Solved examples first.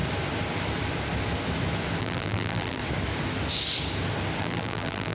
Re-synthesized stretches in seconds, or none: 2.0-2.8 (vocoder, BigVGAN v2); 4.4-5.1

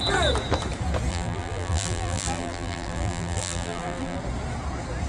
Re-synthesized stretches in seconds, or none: 1.1-4.2 (vocoder, BigVGAN v2)

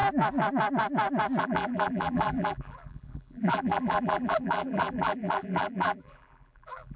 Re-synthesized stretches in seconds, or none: 1.4-7.0 (vocoder, BigVGAN v2)

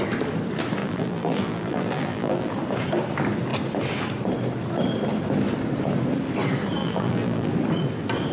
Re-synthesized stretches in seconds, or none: 0.8-2.5 (vocoder, BigVGAN v2); 6.8-7.5

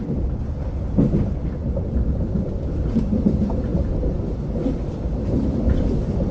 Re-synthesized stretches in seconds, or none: none

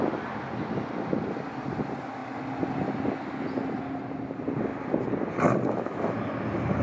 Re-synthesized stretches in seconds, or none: none

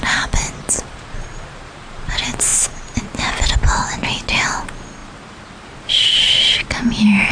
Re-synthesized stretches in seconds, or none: 0.0-2.5 (vocoder, BigVGAN v2); 4.6-7.3